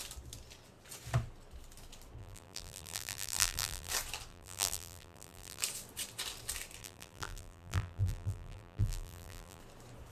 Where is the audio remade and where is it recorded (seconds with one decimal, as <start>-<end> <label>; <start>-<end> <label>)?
0.0-2.2 recorded; 2.2-3.9 remade; 3.9-4.3 recorded; 4.3-5.6 remade; 5.6-6.8 recorded; 6.8-9.6 remade; 9.6-10.1 recorded